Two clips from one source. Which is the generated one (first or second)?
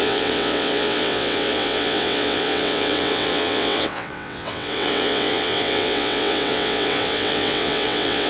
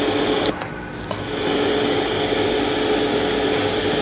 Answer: first